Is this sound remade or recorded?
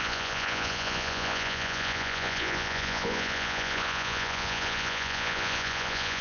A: remade